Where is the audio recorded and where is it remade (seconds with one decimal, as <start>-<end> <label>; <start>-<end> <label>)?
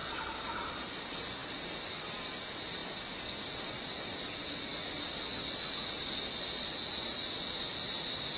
0.0-8.4 recorded